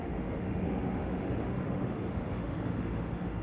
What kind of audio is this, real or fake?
fake